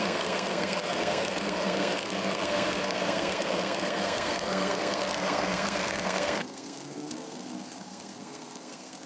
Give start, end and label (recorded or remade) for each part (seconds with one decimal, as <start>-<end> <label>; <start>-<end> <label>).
0.0-9.1 remade